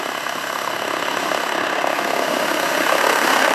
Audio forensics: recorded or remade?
remade